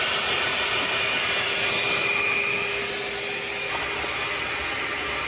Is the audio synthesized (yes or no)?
no